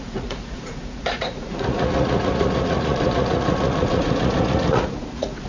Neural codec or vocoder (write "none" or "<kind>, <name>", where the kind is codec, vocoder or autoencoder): vocoder, Vocos